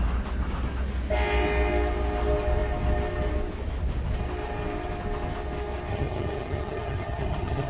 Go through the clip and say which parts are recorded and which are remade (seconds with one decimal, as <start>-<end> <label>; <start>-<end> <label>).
0.0-5.9 recorded; 5.9-7.7 remade

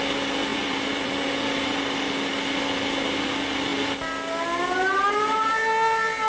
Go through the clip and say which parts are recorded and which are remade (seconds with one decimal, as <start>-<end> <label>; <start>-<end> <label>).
0.0-0.5 recorded; 0.5-1.3 remade; 1.3-6.3 recorded

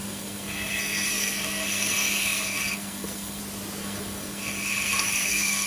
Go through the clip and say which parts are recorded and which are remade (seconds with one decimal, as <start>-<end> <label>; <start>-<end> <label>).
0.0-3.4 remade; 3.4-3.8 recorded; 3.8-5.7 remade